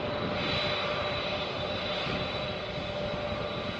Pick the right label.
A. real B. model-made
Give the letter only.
A